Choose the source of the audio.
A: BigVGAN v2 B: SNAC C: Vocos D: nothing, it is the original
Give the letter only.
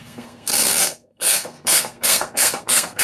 B